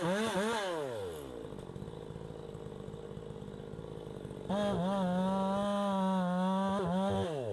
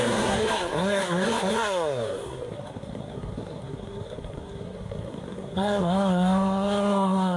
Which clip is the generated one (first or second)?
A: second